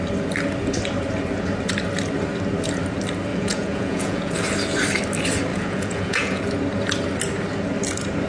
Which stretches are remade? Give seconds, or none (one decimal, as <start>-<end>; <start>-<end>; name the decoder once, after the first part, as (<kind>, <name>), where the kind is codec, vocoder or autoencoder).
3.3-4.3 (vocoder, Vocos); 5.5-6.4